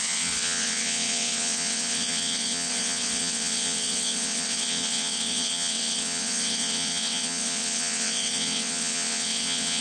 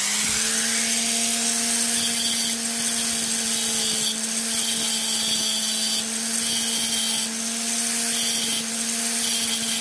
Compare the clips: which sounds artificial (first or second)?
first